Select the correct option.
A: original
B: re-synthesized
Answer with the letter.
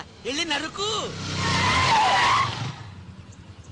A